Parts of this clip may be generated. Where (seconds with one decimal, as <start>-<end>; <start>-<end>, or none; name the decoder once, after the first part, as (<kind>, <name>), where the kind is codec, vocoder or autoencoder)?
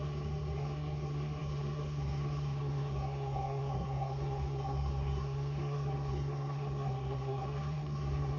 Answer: 0.0-8.4 (codec, SNAC)